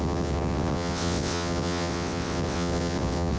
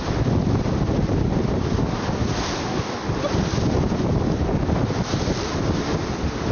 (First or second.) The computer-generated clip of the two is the first